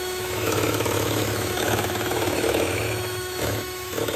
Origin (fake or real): fake